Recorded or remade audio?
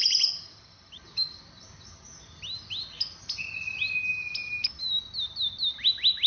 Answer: recorded